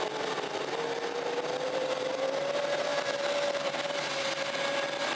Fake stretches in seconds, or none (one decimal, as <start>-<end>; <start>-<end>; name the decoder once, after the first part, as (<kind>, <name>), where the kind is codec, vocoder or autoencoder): 2.9-5.2 (vocoder, BigVGAN v2)